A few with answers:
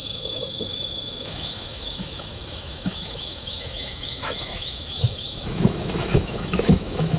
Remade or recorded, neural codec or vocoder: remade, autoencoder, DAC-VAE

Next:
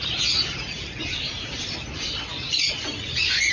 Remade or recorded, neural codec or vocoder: recorded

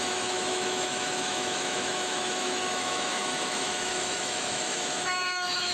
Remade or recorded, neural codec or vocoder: remade, autoencoder, DAC-VAE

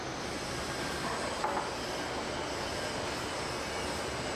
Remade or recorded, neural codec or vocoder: recorded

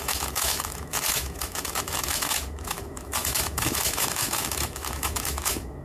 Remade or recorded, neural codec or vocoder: remade, autoencoder, DAC-VAE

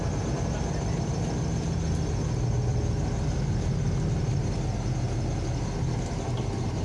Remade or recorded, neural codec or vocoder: recorded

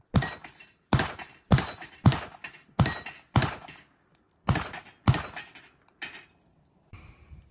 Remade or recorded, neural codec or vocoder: recorded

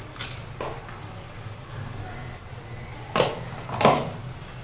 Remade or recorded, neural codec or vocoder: recorded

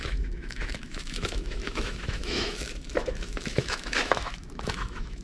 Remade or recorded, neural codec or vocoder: remade, autoencoder, DAC-VAE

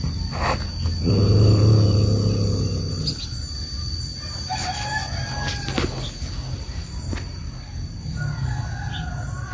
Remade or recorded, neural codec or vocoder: recorded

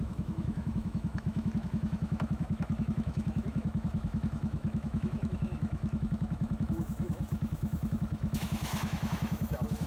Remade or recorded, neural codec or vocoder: remade, autoencoder, DAC-VAE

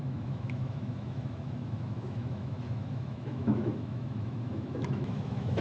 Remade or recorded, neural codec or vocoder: remade, autoencoder, DAC-VAE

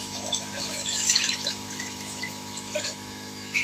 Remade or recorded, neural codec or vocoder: remade, autoencoder, DAC-VAE